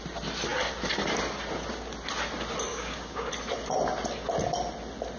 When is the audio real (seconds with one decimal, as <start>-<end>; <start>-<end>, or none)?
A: 0.0-2.7; 3.3-5.2